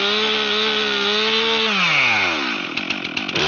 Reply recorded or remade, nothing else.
recorded